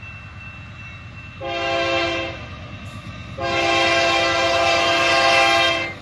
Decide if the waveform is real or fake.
real